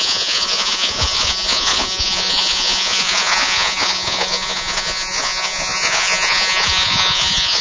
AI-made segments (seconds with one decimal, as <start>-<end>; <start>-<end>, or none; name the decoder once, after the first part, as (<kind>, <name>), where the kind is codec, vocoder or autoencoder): 0.0-7.6 (vocoder, Vocos)